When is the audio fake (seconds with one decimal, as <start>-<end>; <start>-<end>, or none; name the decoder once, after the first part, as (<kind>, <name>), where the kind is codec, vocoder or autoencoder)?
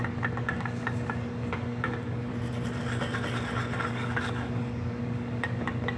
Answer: 0.0-2.3 (codec, DAC); 3.9-6.0